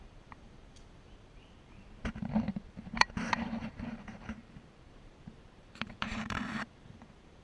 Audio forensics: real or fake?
fake